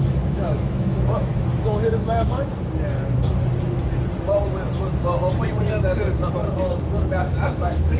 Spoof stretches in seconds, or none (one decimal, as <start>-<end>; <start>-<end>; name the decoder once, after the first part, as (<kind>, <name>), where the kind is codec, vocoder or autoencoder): 0.0-2.5 (autoencoder, DAC-VAE); 7.3-8.0